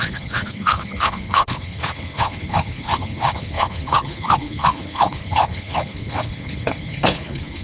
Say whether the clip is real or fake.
fake